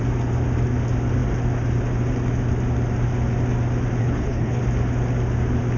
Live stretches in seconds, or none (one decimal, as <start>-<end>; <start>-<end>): 0.0-4.0; 4.6-5.8